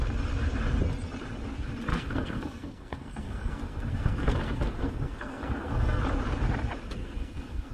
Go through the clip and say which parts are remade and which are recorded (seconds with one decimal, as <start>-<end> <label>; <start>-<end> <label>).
0.0-1.9 recorded; 1.9-6.0 remade; 6.0-7.0 recorded; 7.0-7.7 remade